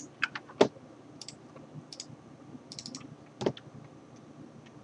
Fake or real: real